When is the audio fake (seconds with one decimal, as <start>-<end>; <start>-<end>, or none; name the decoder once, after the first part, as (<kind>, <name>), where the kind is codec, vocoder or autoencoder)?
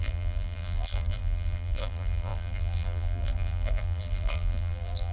0.0-5.1 (vocoder, BigVGAN v2)